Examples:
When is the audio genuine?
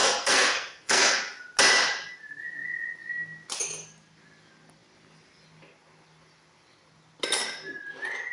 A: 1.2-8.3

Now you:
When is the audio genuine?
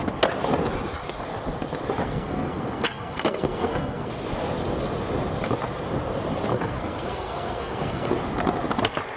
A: 0.0-2.0; 4.1-6.5; 8.1-9.2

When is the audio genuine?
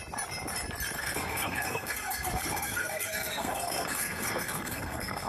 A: 0.0-1.0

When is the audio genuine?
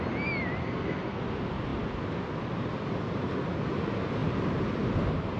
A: 0.0-0.6; 1.2-5.4